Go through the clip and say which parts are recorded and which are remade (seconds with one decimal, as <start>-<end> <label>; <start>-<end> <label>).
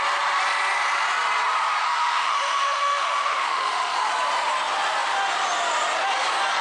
0.0-1.8 recorded; 1.8-4.1 remade; 4.1-6.6 recorded